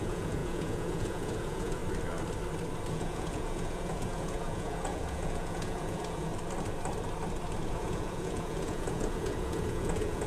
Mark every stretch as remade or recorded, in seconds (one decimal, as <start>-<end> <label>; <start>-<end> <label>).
0.0-1.8 remade; 1.8-2.9 recorded; 2.9-6.3 remade; 6.3-7.7 recorded; 7.7-10.3 remade